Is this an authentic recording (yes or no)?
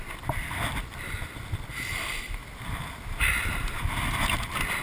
yes